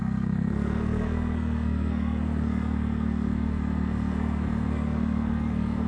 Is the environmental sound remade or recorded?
remade